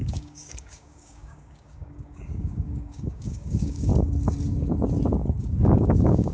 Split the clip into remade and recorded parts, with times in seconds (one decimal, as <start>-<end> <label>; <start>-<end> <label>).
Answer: 0.0-3.9 remade; 3.9-5.4 recorded; 5.4-6.3 remade